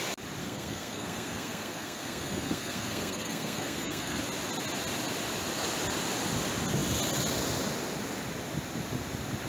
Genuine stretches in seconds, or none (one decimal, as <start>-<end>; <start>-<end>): 0.0-0.4; 4.2-9.5